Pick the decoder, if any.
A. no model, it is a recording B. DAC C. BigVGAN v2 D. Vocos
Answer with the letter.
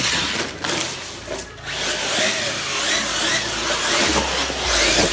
A